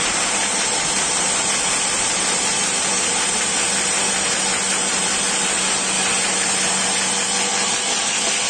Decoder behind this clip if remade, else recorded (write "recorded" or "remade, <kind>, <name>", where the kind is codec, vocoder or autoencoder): recorded